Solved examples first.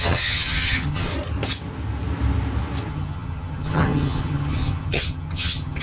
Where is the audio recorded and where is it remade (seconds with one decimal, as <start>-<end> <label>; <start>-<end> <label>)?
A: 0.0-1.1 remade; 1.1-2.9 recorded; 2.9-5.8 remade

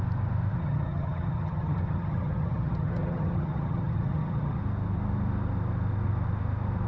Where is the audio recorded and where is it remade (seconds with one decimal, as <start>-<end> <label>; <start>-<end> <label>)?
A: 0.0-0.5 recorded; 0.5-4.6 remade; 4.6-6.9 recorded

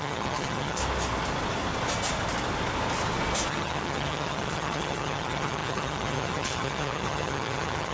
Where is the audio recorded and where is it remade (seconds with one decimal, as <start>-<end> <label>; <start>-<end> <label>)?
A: 0.0-0.8 remade; 0.8-3.5 recorded; 3.5-7.9 remade